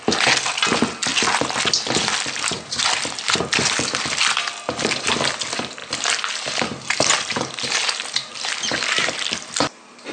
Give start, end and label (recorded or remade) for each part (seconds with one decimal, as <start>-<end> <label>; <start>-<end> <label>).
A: 0.0-10.1 recorded